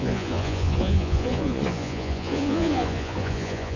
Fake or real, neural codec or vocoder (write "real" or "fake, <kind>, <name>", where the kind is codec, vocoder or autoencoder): fake, vocoder, Vocos